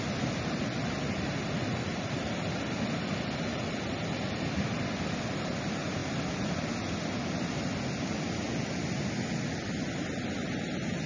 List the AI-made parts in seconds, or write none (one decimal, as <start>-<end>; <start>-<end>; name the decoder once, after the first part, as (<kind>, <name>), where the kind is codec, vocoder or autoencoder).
none